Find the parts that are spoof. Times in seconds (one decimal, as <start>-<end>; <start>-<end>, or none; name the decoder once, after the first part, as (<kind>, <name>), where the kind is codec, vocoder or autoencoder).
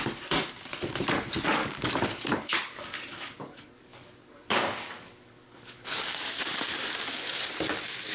1.6-6.4 (codec, DAC)